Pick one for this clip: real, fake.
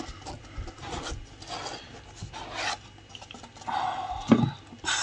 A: real